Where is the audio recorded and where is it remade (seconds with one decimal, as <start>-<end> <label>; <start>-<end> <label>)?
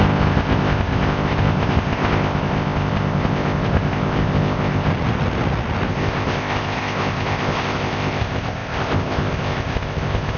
0.0-4.9 remade; 4.9-5.9 recorded; 5.9-10.4 remade